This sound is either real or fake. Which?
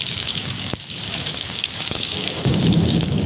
fake